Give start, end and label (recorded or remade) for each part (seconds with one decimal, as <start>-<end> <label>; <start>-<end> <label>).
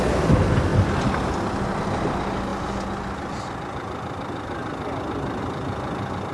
0.0-0.7 recorded; 0.7-1.3 remade; 1.3-6.3 recorded